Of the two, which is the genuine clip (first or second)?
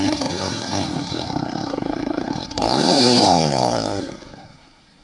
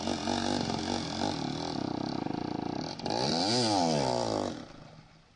second